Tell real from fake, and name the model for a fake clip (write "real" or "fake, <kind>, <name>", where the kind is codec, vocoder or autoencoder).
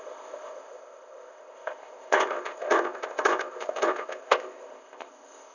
fake, codec, ZipCodec